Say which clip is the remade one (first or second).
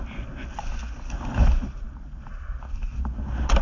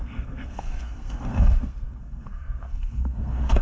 second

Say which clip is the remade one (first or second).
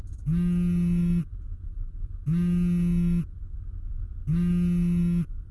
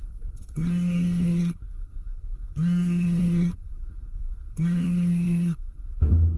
second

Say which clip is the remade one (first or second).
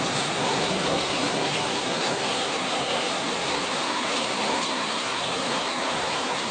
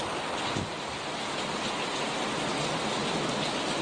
first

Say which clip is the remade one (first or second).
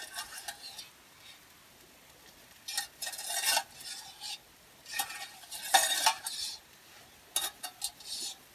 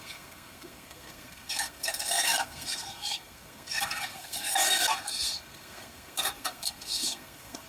second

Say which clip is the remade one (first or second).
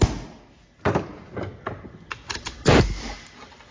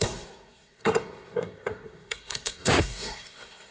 second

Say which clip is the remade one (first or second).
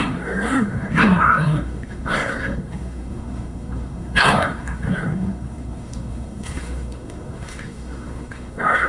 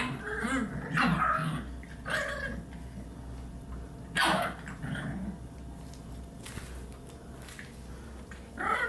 first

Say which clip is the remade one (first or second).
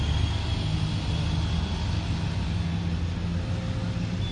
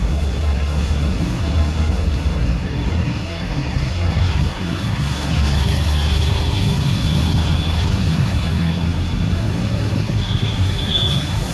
second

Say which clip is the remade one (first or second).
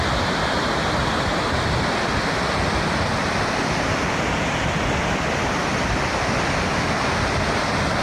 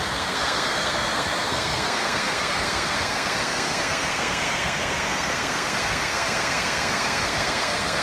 second